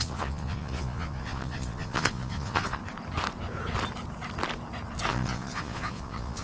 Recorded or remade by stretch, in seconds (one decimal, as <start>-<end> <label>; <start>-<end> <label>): 0.0-2.8 remade; 2.8-5.1 recorded; 5.1-6.4 remade